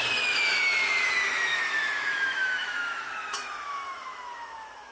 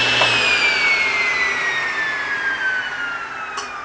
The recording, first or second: second